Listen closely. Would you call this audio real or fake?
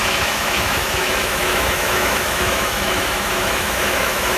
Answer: fake